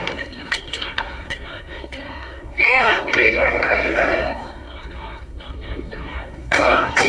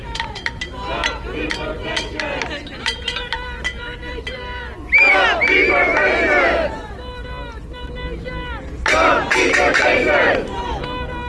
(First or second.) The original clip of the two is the second